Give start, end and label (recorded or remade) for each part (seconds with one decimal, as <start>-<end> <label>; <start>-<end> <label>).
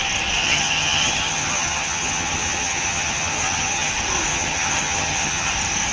0.0-0.4 recorded; 0.4-3.9 remade; 3.9-4.3 recorded; 4.3-5.5 remade; 5.5-5.9 recorded